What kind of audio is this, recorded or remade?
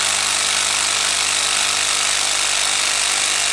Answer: recorded